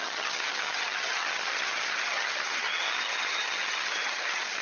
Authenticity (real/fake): fake